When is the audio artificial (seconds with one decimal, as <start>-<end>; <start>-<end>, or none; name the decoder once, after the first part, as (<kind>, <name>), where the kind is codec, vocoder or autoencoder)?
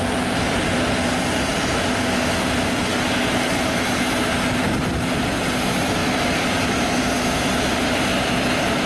none